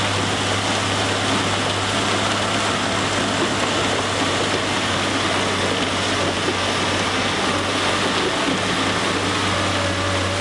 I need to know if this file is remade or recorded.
recorded